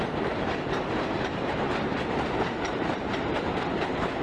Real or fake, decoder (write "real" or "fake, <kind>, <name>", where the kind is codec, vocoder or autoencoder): fake, vocoder, BigVGAN v2